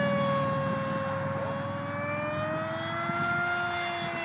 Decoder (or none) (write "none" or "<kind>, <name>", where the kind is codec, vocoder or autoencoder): none